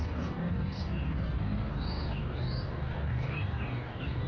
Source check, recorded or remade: remade